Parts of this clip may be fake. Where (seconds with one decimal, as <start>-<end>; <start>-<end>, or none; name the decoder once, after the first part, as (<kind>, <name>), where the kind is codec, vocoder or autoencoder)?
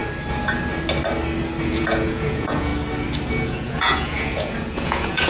1.7-2.7 (vocoder, Vocos); 3.3-5.3